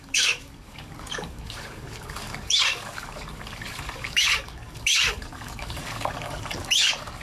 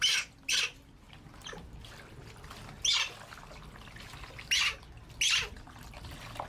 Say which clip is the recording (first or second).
second